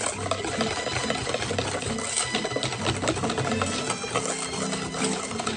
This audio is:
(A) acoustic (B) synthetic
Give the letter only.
A